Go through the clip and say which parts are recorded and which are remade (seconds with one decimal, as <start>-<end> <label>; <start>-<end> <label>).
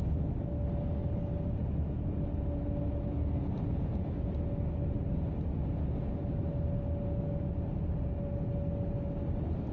0.0-9.7 recorded